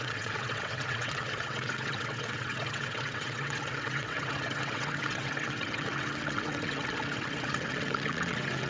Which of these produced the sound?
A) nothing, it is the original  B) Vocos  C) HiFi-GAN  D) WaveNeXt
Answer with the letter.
D